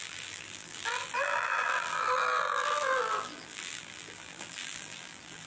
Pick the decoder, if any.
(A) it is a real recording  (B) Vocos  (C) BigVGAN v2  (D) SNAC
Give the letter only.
C